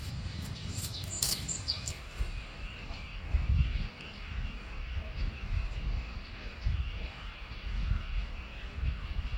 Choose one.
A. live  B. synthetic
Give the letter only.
B